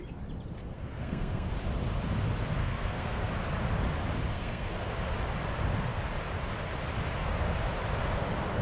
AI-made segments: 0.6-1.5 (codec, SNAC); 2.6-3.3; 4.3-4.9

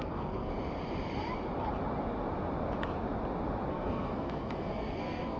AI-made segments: 0.0-0.5 (codec, SNAC); 3.7-5.4

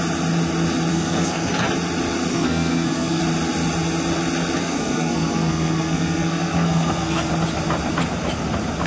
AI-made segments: 0.9-1.5 (codec, SNAC); 2.3-3.2; 4.6-7.3

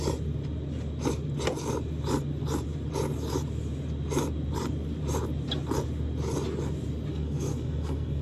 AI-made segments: 7.1-8.2 (codec, SNAC)